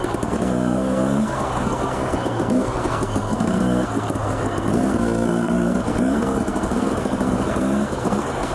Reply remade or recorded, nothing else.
remade